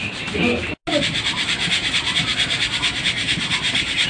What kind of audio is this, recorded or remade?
recorded